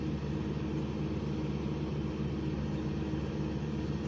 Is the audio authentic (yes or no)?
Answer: yes